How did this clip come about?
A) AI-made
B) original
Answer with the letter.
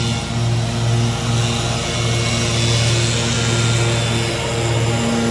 B